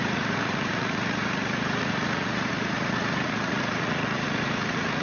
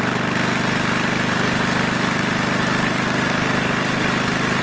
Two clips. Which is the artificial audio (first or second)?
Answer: first